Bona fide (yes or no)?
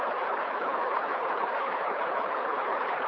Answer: no